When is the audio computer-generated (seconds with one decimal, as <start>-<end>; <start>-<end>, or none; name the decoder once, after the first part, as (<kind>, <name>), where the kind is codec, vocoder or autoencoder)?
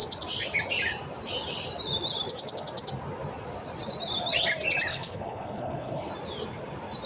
4.9-6.1 (codec, HILCodec)